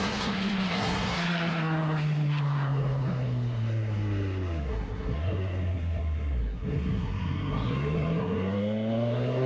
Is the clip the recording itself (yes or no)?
no